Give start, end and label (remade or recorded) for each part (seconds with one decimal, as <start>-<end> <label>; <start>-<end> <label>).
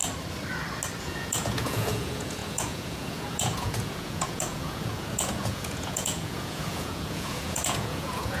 0.0-1.0 recorded; 1.0-8.4 remade